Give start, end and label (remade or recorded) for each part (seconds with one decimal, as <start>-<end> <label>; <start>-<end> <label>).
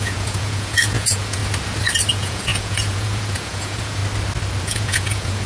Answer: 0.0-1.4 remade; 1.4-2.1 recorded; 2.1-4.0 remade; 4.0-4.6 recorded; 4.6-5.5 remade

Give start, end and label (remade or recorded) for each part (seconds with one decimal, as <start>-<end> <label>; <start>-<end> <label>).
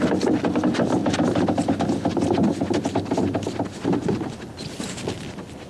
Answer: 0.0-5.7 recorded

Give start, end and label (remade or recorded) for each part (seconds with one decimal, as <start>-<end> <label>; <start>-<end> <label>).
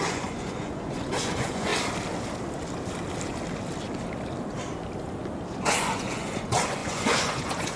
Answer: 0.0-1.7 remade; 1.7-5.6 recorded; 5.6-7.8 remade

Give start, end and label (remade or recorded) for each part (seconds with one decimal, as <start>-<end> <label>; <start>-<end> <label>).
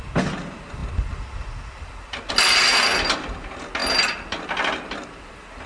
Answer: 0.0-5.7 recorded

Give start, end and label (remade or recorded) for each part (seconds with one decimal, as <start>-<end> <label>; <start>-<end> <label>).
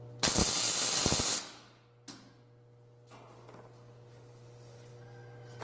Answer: 0.0-5.6 recorded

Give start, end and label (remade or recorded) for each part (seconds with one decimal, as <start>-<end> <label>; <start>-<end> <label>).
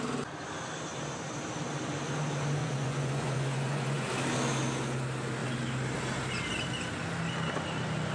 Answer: 0.0-2.6 recorded; 2.6-4.1 remade; 4.1-8.1 recorded